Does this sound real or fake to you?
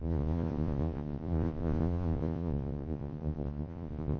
fake